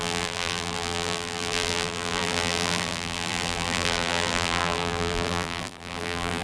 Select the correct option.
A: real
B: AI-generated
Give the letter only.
B